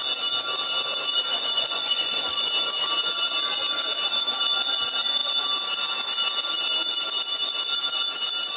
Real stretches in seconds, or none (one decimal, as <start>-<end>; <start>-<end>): 0.0-1.3; 2.4-8.6